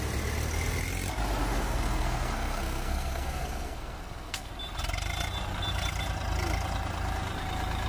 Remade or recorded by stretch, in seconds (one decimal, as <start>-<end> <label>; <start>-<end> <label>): 0.0-1.4 recorded; 1.4-4.5 remade; 4.5-7.9 recorded